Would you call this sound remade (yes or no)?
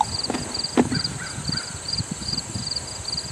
no